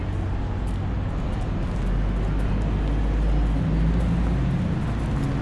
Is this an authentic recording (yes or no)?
yes